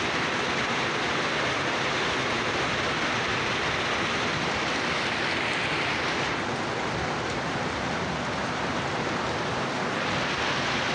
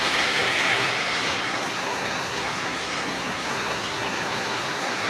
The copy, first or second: second